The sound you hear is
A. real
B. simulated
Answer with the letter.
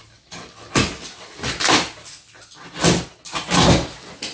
A